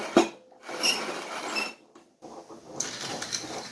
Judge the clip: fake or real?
real